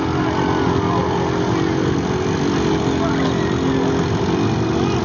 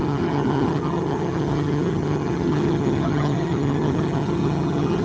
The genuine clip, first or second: first